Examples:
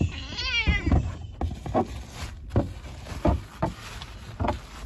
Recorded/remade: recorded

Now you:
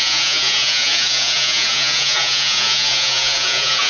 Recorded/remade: remade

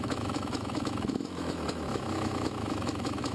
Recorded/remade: remade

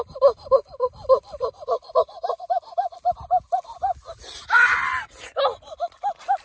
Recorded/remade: recorded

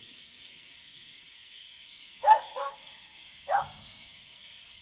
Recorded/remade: remade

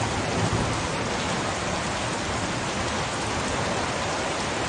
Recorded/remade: recorded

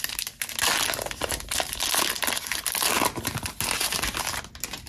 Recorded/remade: recorded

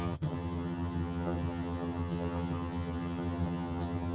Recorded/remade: remade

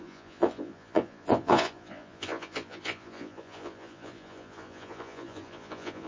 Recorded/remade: remade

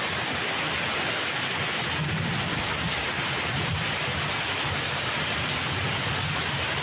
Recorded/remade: recorded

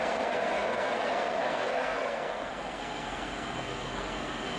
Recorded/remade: remade